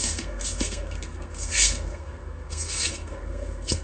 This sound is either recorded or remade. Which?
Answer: remade